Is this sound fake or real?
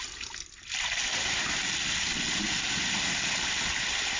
real